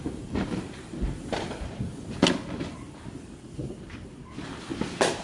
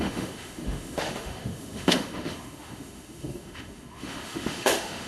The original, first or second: first